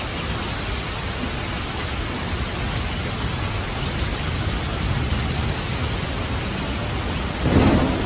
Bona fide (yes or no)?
yes